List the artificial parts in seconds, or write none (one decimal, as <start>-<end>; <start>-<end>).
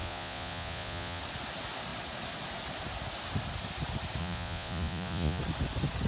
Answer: 0.0-1.2; 4.2-5.4